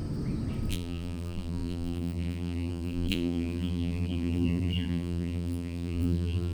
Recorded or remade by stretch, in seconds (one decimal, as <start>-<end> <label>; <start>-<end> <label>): 0.0-0.7 recorded; 0.7-6.5 remade